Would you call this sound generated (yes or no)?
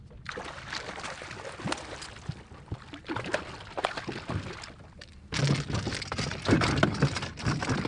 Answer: no